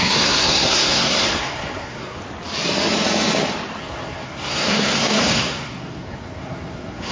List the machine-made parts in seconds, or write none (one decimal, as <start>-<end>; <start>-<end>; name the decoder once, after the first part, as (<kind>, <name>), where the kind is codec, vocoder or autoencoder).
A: 0.0-2.2 (codec, SNAC); 3.8-7.1